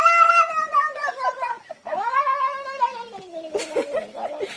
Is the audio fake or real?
real